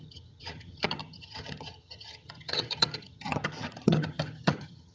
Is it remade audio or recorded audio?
remade